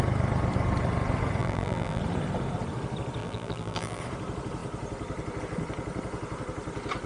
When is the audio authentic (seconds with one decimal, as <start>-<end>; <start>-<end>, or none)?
0.0-1.4; 2.0-3.2; 4.0-7.1